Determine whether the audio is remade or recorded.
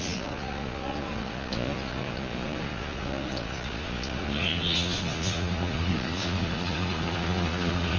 remade